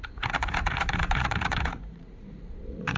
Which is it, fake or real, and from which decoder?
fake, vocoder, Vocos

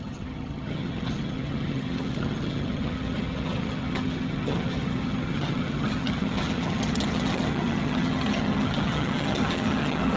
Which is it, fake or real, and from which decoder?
fake, vocoder, HiFi-GAN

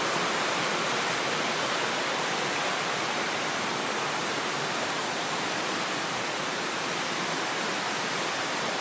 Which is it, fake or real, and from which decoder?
real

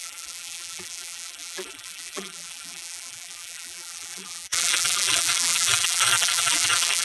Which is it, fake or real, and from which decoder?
fake, vocoder, BigVGAN v2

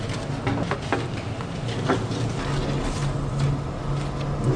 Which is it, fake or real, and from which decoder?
real